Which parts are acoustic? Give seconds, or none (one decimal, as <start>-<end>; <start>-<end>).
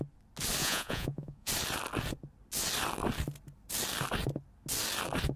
0.0-0.6; 1.5-5.4